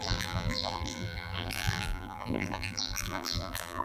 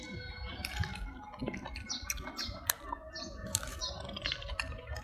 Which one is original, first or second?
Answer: second